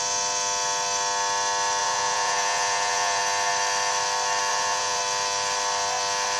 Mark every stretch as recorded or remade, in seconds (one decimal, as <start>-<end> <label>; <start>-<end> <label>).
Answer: 0.0-1.8 recorded; 1.8-3.2 remade; 3.2-4.5 recorded; 4.5-5.0 remade; 5.0-6.4 recorded